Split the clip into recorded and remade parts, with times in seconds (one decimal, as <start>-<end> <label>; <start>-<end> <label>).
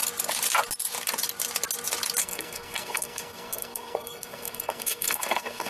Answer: 0.0-2.2 recorded; 2.2-5.7 remade